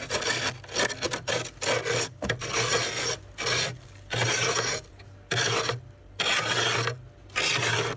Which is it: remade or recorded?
recorded